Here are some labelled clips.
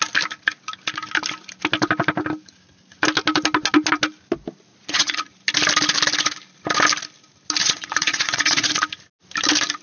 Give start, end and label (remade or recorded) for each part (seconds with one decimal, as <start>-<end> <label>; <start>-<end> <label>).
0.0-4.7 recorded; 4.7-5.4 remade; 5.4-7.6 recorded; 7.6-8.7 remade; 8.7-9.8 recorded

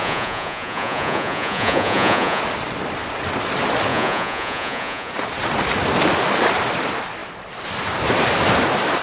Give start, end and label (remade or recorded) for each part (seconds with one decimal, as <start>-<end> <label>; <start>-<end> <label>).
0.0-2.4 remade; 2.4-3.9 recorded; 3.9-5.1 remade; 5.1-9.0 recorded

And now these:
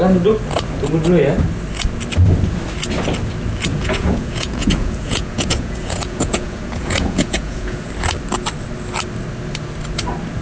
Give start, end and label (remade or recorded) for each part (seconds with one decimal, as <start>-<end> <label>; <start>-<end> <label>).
0.0-3.7 recorded; 3.7-7.9 remade; 7.9-10.4 recorded